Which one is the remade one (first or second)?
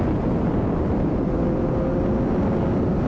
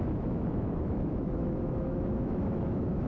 second